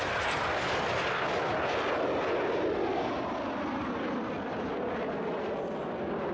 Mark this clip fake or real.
real